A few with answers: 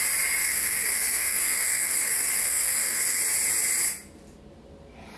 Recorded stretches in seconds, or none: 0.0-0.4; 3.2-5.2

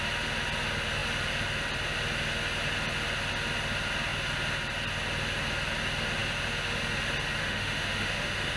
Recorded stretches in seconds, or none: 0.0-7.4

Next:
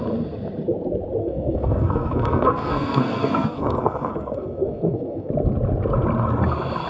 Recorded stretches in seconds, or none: 0.0-1.2; 5.3-6.9

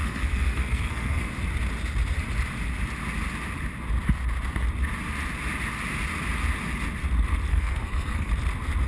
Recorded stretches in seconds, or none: 1.3-7.5; 8.3-8.9